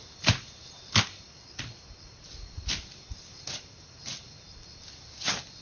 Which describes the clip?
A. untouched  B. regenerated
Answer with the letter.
A